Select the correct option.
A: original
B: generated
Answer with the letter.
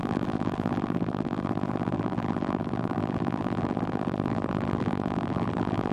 B